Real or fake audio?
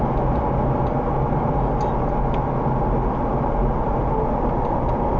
real